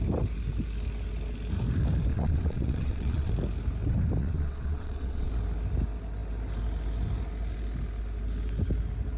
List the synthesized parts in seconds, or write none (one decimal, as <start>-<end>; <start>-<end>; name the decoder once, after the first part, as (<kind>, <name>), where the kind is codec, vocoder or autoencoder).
2.1-3.3 (vocoder, WaveNeXt); 4.2-5.3